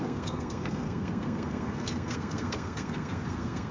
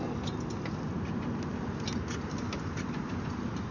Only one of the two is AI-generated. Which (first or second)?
first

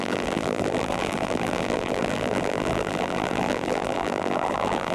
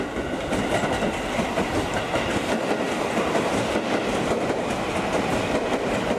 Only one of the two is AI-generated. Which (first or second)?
first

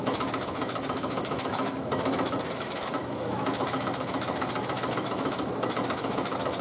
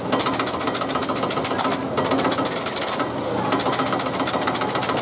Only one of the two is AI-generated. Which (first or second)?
first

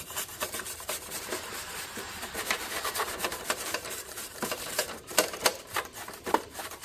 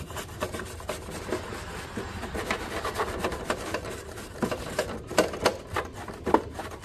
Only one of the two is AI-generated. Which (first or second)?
first